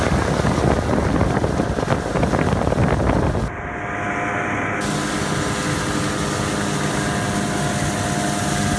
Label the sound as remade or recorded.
recorded